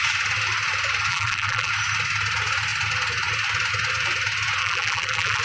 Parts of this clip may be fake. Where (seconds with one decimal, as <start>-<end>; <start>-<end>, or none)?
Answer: 1.1-1.7; 4.6-5.4